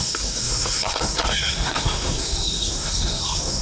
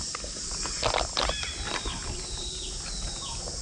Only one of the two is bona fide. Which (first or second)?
second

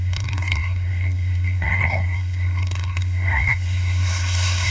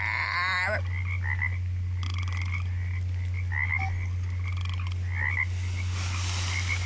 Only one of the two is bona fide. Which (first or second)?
second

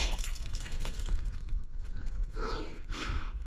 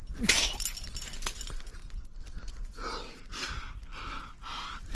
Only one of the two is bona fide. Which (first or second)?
second